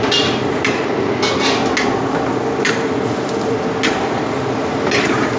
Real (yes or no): yes